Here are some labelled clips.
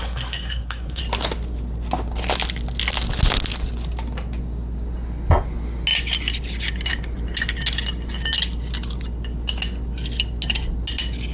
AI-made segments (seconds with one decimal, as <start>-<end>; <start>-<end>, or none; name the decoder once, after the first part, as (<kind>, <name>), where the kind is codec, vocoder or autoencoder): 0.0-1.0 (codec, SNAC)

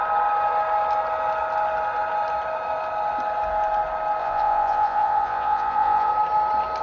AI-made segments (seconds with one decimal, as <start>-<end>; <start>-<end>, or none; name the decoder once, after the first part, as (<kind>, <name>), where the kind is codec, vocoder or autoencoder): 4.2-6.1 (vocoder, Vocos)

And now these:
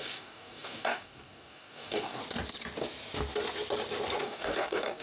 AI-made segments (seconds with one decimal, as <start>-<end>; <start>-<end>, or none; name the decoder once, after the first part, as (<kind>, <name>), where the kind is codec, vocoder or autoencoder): 0.0-2.2 (codec, DAC); 4.2-5.0

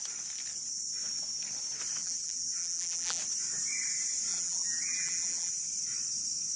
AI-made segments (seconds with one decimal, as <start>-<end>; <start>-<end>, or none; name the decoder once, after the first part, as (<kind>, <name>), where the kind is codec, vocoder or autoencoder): 2.0-3.2 (vocoder, BigVGAN v2); 4.3-5.5